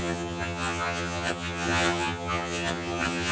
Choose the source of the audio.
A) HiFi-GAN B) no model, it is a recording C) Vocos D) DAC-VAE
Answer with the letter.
A